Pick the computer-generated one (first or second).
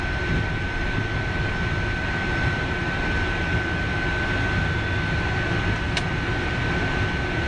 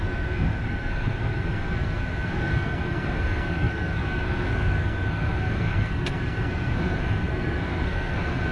second